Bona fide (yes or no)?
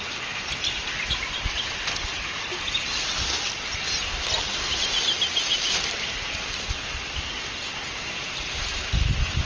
yes